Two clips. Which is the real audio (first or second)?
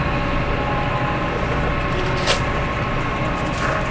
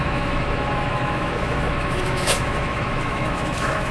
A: first